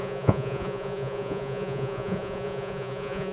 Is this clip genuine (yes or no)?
no